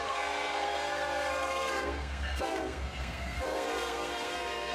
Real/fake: fake